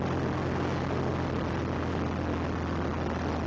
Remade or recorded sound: recorded